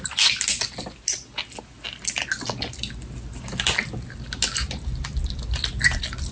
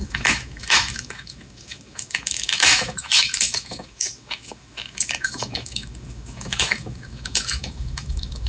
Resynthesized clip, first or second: second